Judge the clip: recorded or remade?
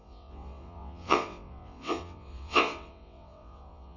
remade